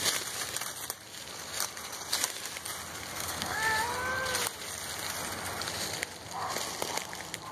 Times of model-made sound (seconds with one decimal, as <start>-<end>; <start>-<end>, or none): 3.1-3.6